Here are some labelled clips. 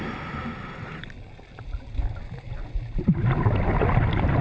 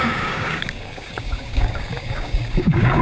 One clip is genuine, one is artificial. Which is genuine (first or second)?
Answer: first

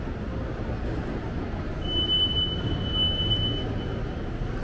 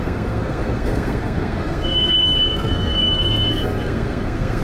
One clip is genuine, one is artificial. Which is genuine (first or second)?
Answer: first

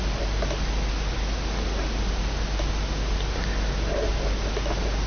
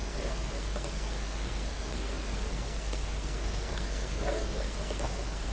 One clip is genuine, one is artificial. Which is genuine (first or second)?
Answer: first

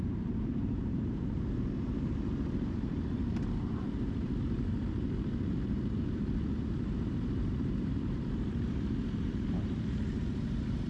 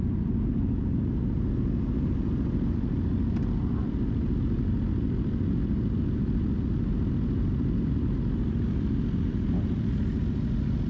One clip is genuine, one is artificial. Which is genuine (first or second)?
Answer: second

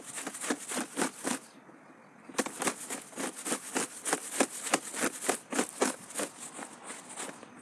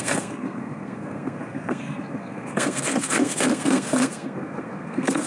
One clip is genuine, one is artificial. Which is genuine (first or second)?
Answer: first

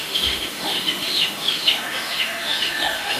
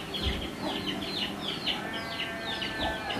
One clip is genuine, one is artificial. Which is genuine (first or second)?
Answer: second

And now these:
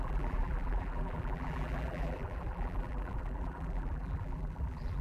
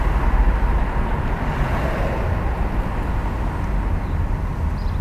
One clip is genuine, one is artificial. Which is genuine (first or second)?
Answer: second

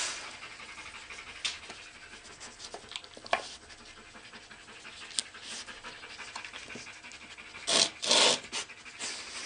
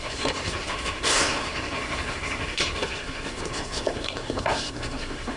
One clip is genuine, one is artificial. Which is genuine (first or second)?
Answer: first